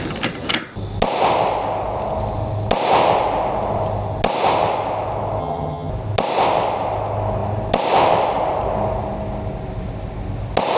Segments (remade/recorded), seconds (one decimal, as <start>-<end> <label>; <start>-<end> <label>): 0.0-5.4 recorded; 5.4-5.9 remade; 5.9-10.8 recorded